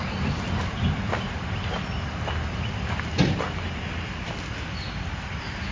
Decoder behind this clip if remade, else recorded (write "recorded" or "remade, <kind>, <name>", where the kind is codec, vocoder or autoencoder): recorded